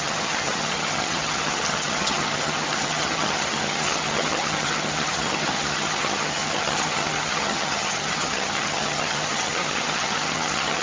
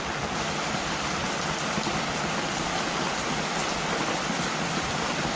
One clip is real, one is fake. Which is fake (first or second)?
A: first